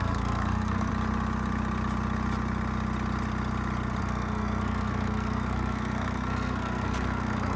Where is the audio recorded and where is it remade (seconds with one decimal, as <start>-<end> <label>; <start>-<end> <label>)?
0.0-0.9 remade; 0.9-4.0 recorded; 4.0-7.6 remade